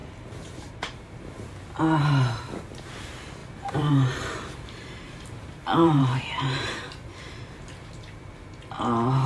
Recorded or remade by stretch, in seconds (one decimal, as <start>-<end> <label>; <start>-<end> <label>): 0.0-1.3 remade; 1.3-3.4 recorded; 3.4-6.8 remade; 6.8-9.3 recorded